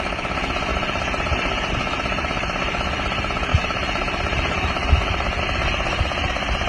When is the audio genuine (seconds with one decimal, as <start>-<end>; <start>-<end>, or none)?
0.0-0.7; 1.7-3.5; 5.4-6.7